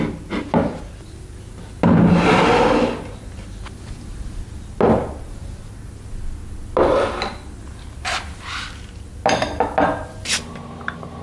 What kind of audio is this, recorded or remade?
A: recorded